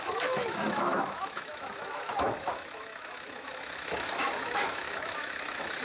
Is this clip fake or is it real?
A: fake